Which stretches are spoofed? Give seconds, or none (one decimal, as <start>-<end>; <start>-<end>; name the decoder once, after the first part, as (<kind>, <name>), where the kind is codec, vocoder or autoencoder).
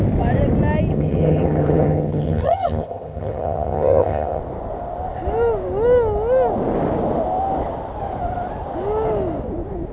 0.9-4.4 (vocoder, HiFi-GAN)